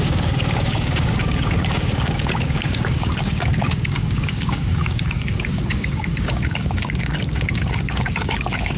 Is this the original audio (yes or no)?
no